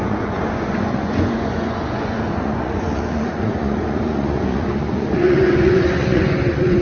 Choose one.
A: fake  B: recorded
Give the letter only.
A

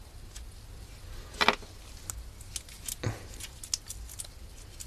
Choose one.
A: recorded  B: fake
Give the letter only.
A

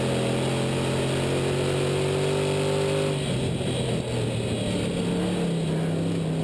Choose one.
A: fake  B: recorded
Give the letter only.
B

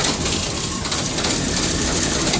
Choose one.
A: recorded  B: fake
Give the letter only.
A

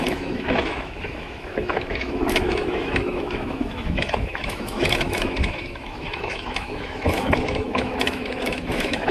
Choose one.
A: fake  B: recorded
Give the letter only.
A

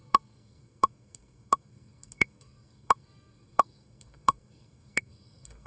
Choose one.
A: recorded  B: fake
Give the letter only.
B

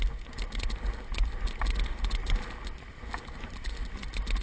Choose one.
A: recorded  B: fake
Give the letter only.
A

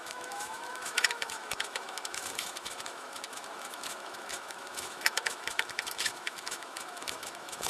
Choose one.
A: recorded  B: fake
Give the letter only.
B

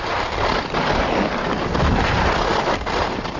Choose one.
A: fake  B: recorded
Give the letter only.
B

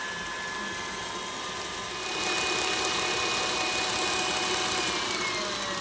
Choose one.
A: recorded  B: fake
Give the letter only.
A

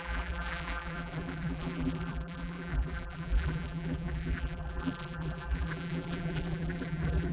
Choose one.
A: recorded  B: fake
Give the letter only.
B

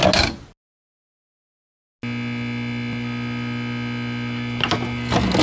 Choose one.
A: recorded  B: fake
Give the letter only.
A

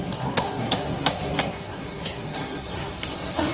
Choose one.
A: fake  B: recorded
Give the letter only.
A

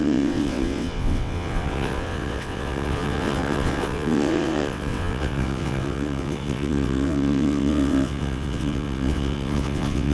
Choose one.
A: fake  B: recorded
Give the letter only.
A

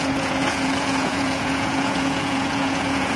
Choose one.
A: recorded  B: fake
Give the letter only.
B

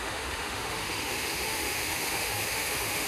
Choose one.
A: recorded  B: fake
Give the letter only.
B